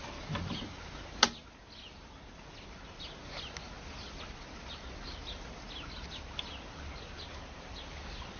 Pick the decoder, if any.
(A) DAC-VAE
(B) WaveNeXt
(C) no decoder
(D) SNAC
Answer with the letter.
C